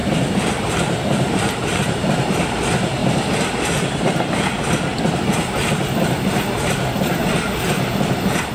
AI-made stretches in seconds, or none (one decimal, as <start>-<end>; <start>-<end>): 0.0-2.3